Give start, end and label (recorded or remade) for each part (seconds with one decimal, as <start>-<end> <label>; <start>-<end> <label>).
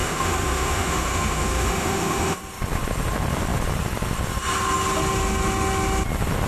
0.0-2.4 remade; 2.4-6.5 recorded